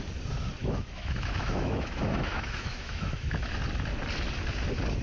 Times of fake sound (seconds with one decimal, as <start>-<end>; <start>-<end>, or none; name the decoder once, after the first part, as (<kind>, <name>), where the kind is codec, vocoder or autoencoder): 0.6-3.6 (autoencoder, DAC-VAE)